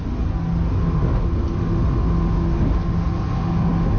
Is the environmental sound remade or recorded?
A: recorded